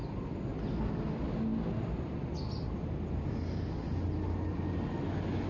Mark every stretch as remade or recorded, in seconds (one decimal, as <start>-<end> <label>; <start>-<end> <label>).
0.0-5.5 recorded